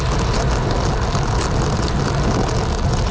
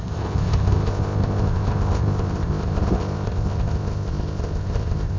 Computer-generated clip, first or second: second